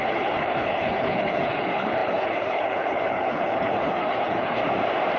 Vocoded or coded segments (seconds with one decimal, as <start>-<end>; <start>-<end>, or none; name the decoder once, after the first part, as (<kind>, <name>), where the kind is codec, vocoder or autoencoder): 0.0-4.6 (codec, HILCodec)